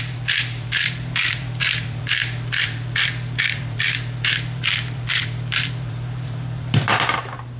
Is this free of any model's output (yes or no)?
no